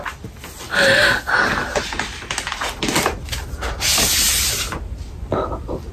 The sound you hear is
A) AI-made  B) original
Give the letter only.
B